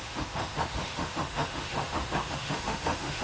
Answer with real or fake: fake